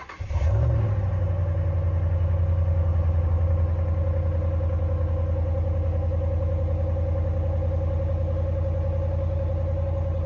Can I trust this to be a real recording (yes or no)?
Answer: yes